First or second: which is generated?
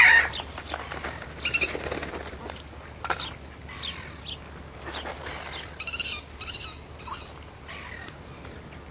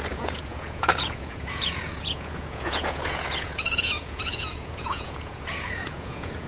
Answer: second